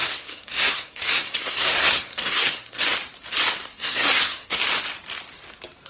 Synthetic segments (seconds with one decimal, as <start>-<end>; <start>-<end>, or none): 0.0-2.8; 3.6-4.6